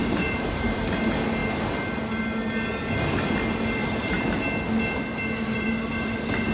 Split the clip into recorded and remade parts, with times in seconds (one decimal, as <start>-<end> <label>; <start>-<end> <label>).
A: 0.0-0.8 remade; 0.8-6.5 recorded